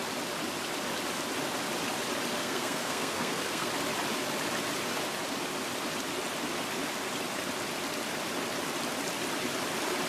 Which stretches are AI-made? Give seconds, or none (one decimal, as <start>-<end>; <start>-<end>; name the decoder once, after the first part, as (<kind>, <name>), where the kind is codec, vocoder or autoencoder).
2.4-3.7 (codec, SNAC)